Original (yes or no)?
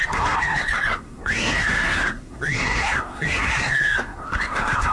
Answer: no